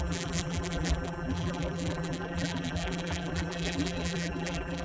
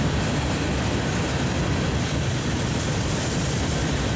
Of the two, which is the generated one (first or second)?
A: first